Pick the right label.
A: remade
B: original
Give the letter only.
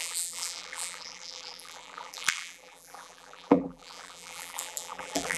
A